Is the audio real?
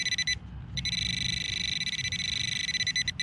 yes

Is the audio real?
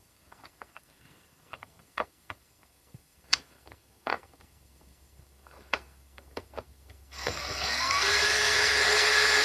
no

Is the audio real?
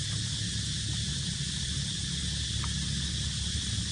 yes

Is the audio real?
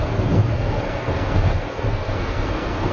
no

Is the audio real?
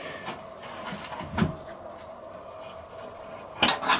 yes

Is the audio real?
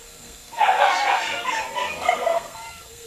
no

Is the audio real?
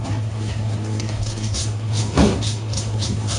no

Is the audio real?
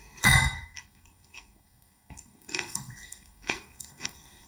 no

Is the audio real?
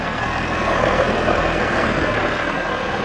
no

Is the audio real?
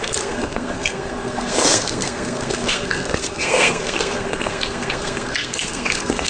no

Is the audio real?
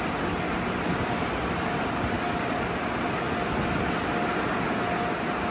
yes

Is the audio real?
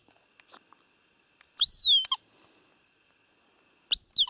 yes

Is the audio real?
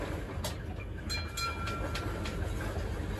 yes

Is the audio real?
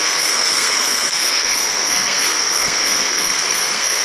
no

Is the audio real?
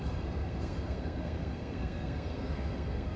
no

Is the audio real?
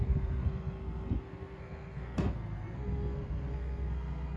no